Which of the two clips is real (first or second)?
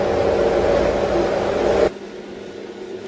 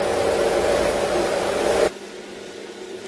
first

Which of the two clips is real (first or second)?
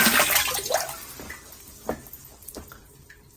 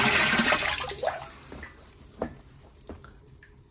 first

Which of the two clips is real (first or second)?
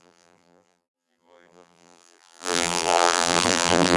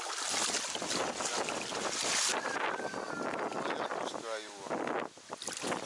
second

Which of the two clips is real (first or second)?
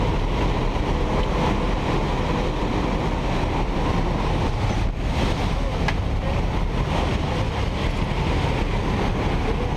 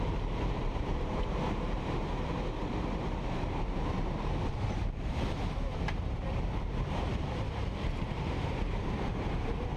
first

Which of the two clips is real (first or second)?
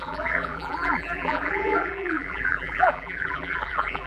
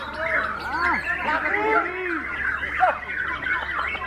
second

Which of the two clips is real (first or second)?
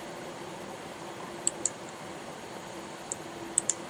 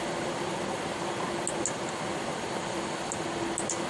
second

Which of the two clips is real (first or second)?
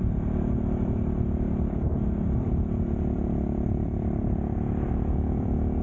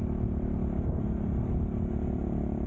second